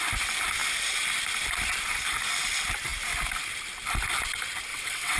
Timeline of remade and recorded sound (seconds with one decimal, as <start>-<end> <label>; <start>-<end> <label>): 0.0-4.7 recorded; 4.7-5.2 remade